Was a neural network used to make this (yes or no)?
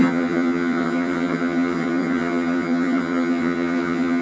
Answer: yes